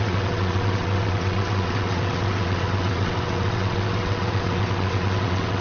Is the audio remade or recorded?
remade